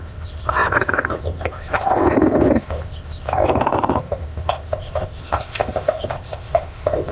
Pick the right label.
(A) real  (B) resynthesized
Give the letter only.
B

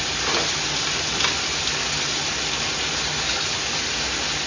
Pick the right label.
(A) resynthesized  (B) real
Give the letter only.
B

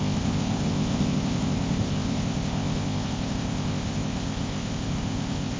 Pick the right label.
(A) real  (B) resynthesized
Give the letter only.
B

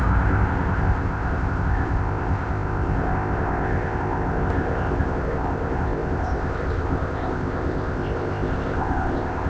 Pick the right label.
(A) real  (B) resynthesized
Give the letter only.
B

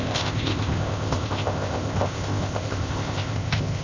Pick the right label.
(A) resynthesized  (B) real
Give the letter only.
A